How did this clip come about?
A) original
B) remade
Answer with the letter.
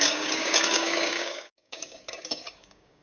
B